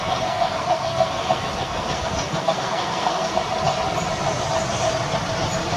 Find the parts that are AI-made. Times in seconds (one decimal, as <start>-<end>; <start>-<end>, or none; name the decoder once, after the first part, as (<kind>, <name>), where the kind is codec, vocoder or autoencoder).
0.0-3.4 (codec, SNAC)